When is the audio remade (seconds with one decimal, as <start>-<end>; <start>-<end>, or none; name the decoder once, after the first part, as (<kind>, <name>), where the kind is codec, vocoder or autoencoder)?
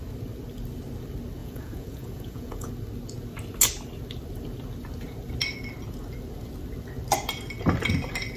1.4-2.7 (vocoder, Vocos)